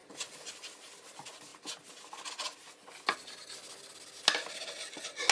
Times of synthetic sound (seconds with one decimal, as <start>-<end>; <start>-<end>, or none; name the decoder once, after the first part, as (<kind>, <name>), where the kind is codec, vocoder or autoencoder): none